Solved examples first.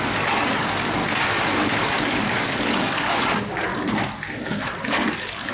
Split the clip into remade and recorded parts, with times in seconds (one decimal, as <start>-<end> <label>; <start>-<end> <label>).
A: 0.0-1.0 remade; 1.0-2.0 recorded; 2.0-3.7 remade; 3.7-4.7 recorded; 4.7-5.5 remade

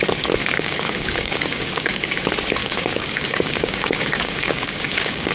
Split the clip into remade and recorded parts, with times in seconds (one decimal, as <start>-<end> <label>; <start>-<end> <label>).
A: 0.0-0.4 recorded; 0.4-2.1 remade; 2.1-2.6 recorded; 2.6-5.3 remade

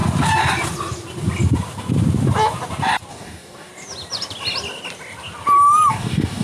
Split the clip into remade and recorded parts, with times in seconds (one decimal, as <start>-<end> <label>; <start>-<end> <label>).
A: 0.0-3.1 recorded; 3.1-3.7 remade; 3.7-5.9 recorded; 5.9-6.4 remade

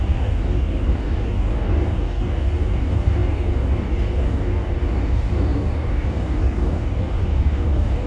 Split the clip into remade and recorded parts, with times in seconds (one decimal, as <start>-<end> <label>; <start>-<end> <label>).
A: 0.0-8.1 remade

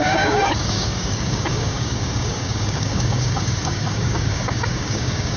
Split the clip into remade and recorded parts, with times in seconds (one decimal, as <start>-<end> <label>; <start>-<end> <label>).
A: 0.0-5.4 remade

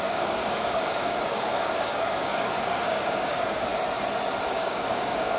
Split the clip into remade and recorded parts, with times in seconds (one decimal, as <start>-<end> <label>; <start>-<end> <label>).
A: 0.0-3.7 remade; 3.7-4.5 recorded; 4.5-5.4 remade

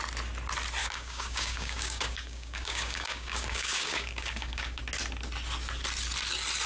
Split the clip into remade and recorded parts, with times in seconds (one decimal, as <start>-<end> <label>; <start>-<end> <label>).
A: 0.0-0.8 recorded; 0.8-4.8 remade; 4.8-6.7 recorded

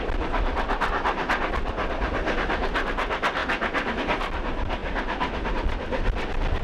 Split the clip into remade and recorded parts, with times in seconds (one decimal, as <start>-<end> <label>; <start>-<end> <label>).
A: 0.0-6.6 recorded